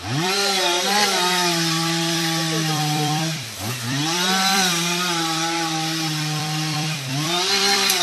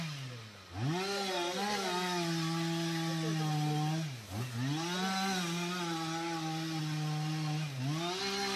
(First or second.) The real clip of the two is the second